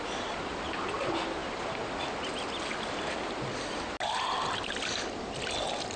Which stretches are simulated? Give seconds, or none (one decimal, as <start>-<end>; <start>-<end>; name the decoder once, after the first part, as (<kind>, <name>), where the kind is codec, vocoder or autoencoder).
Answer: none